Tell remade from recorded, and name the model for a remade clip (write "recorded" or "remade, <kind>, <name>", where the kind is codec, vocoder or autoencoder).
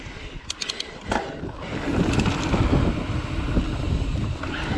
recorded